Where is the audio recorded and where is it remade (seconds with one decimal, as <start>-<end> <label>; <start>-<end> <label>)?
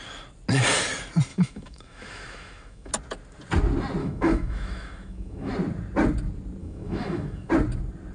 0.0-1.3 recorded; 1.3-2.9 remade; 2.9-4.0 recorded; 4.0-5.5 remade; 5.5-6.6 recorded; 6.6-7.5 remade; 7.5-8.1 recorded